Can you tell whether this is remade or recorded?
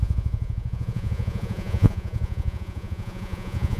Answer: remade